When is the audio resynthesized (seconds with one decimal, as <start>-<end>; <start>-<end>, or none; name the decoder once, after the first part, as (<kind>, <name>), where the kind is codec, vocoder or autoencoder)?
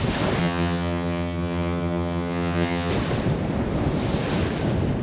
0.4-2.9 (vocoder, HiFi-GAN)